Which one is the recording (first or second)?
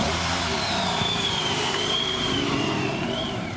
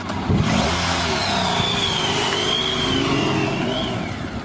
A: second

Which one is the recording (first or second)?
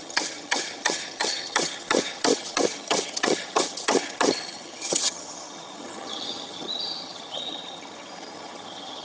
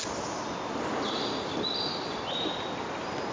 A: second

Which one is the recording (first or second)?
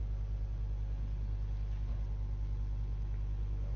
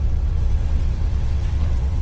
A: first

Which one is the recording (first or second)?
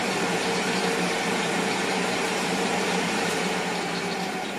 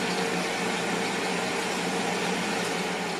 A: second